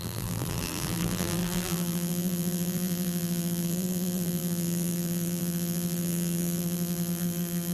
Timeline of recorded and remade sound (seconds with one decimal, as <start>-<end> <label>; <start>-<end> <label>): 0.0-7.7 remade